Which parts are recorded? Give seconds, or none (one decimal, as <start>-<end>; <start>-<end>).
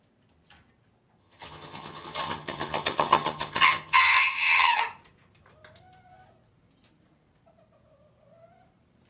0.0-1.2; 4.8-9.1